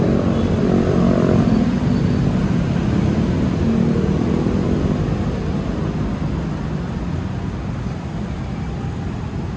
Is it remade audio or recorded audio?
recorded